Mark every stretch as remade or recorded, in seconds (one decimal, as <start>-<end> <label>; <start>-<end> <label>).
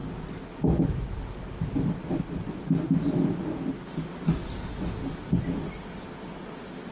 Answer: 0.0-6.9 recorded